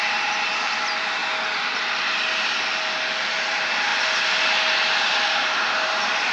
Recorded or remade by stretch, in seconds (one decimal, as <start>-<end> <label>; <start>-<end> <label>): 0.0-1.2 remade; 1.2-3.3 recorded; 3.3-3.9 remade; 3.9-5.4 recorded; 5.4-6.3 remade